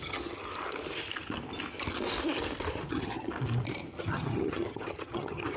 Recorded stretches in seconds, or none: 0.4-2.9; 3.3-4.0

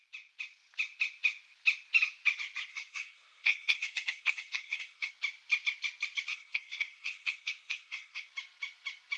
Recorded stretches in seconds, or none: 0.0-2.7; 5.1-6.3; 8.3-9.2